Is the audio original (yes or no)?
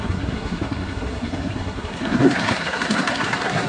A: no